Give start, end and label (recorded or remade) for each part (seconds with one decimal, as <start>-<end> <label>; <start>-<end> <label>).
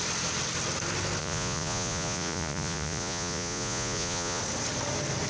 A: 0.0-1.2 recorded; 1.2-4.4 remade; 4.4-5.3 recorded